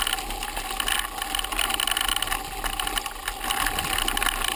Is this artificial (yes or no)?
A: no